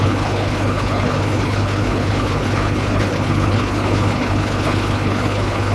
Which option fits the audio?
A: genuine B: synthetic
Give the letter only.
B